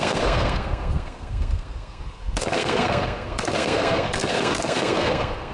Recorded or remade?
remade